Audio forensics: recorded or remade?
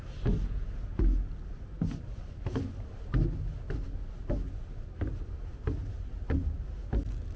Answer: recorded